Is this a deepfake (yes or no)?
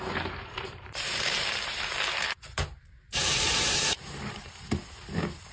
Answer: yes